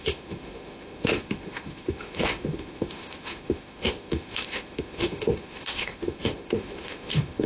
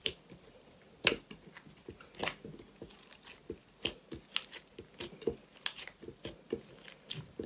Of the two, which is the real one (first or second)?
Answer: second